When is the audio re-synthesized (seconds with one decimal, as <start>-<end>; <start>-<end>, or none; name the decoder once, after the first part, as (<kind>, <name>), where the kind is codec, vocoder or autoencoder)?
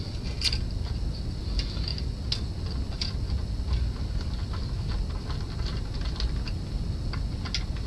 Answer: none